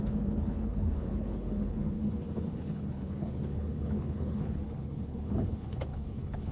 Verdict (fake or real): fake